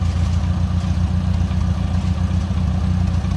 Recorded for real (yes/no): yes